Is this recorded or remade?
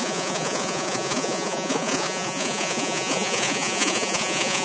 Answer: remade